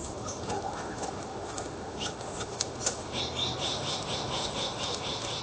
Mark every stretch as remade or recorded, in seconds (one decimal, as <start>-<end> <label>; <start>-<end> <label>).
0.0-3.2 remade; 3.2-3.6 recorded; 3.6-5.4 remade